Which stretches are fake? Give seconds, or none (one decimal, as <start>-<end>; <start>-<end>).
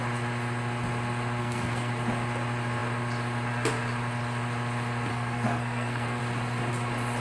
1.4-1.9; 5.1-6.2